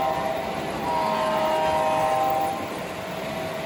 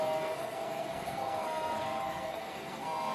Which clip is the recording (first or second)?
first